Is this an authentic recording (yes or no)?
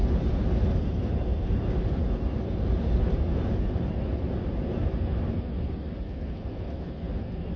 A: yes